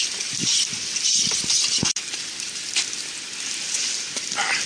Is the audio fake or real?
real